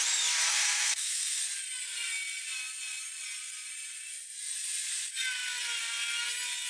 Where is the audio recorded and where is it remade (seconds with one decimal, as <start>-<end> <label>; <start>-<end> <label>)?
0.0-0.5 recorded; 0.5-1.4 remade; 1.4-6.7 recorded